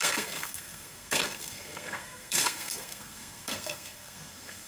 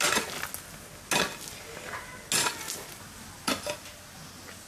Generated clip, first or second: first